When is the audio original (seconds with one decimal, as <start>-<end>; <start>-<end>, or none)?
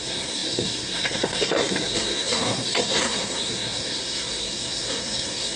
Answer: none